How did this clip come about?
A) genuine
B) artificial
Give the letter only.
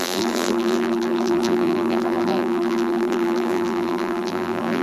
B